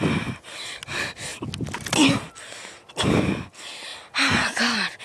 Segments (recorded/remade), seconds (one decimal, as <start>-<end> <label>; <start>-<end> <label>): 0.0-5.0 recorded